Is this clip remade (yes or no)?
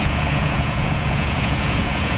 yes